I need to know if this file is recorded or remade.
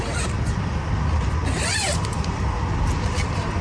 recorded